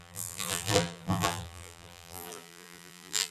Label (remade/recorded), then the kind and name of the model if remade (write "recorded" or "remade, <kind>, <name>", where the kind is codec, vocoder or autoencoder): remade, vocoder, BigVGAN v2